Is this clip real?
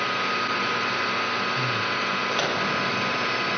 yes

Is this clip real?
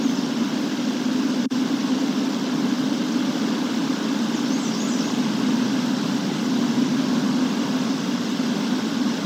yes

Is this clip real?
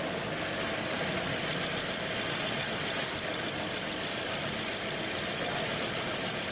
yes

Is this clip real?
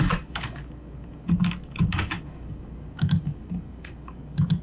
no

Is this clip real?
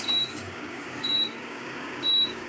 no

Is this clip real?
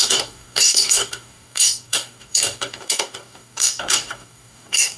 no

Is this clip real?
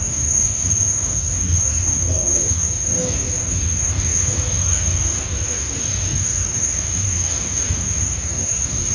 no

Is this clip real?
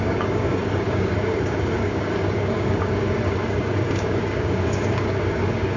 no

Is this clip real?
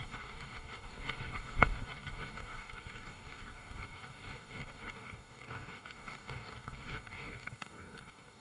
no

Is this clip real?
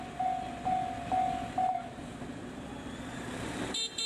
yes